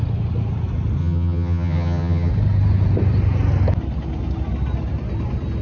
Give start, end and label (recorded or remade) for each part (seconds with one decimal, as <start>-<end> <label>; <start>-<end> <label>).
0.0-1.0 recorded; 1.0-2.3 remade; 2.3-5.6 recorded